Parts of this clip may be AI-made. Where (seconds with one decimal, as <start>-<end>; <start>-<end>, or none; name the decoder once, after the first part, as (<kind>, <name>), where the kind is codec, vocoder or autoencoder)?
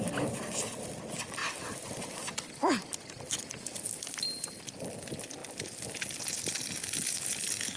0.0-7.8 (vocoder, BigVGAN v2)